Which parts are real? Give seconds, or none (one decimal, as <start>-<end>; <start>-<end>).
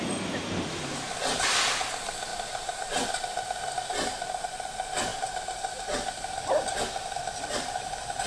0.0-8.3